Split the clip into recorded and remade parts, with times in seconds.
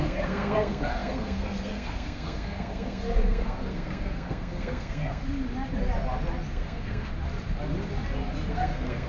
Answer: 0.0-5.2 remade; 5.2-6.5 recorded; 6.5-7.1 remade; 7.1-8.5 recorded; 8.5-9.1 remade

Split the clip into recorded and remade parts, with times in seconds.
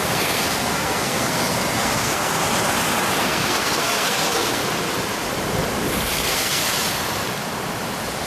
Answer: 0.0-2.4 remade; 2.4-3.2 recorded; 3.2-4.6 remade; 4.6-6.1 recorded; 6.1-6.6 remade; 6.6-8.3 recorded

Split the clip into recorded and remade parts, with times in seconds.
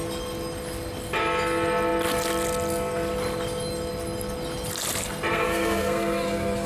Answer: 0.0-5.3 recorded; 5.3-6.7 remade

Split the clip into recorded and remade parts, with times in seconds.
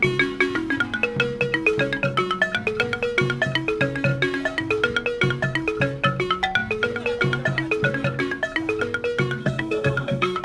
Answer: 0.0-9.4 recorded; 9.4-10.4 remade